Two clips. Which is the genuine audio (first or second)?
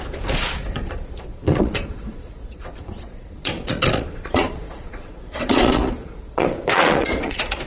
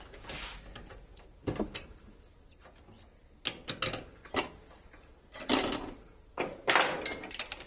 second